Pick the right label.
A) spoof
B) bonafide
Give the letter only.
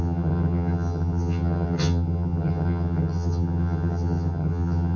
A